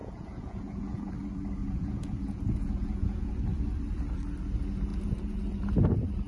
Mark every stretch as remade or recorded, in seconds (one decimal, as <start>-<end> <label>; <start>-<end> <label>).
0.0-1.1 remade; 1.1-1.6 recorded; 1.6-3.3 remade; 3.3-4.9 recorded; 4.9-5.4 remade; 5.4-6.3 recorded